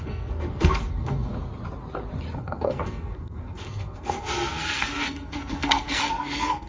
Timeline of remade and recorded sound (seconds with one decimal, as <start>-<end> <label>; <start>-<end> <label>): 0.0-1.3 remade; 1.3-2.4 recorded; 2.4-6.7 remade